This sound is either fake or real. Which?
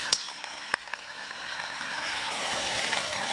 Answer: fake